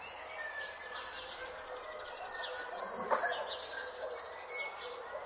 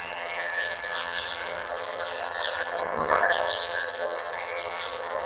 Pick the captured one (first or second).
first